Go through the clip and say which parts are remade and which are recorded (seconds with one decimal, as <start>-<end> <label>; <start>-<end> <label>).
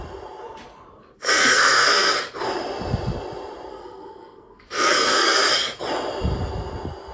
0.0-1.2 recorded; 1.2-2.1 remade; 2.1-3.7 recorded; 3.7-5.4 remade; 5.4-7.1 recorded